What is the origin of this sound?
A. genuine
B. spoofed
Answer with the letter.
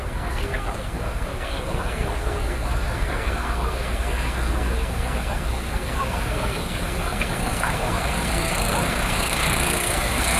B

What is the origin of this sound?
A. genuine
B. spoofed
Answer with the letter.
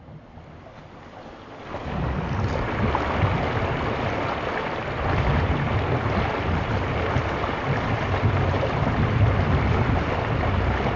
A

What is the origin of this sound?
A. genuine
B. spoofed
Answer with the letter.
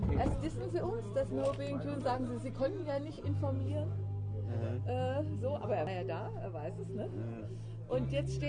A